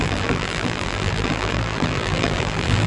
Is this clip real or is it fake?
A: fake